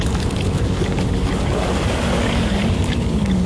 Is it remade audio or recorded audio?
remade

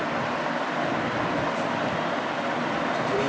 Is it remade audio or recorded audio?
recorded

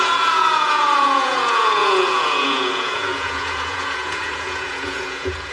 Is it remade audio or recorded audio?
remade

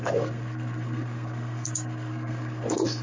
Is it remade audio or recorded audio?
remade